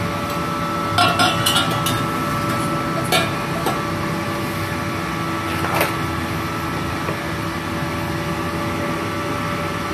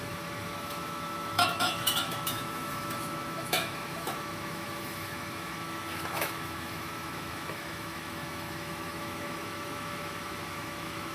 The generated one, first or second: second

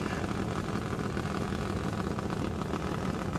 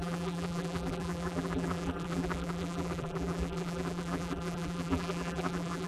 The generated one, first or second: second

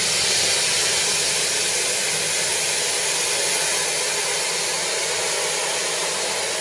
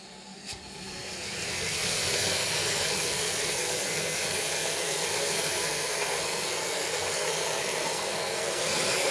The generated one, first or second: second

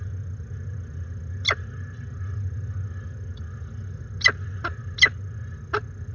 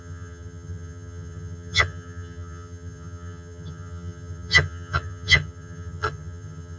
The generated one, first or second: second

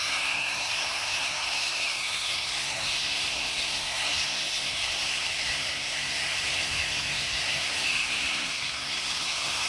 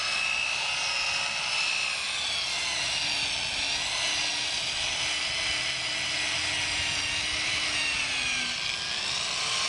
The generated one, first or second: first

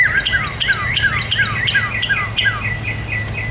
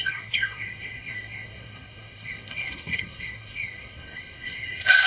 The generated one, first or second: second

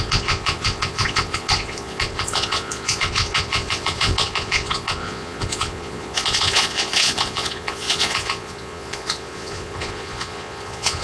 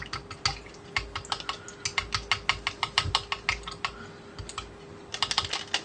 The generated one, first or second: first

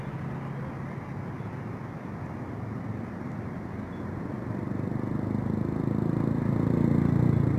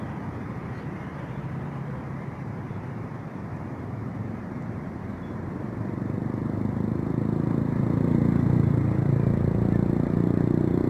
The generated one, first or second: second